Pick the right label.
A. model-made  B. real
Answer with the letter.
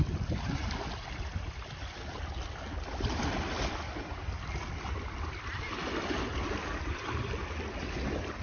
B